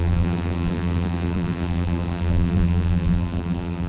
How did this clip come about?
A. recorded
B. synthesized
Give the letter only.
B